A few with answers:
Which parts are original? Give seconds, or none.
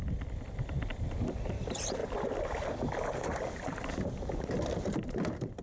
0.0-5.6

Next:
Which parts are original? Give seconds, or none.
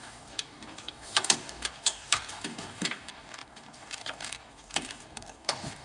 none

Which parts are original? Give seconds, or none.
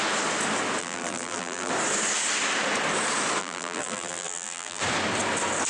0.0-0.8; 1.7-3.4; 4.8-5.7